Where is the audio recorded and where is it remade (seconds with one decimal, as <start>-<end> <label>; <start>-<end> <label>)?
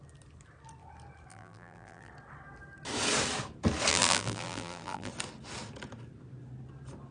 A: 0.0-1.3 recorded; 1.3-2.1 remade; 2.1-3.9 recorded; 3.9-5.1 remade; 5.1-7.1 recorded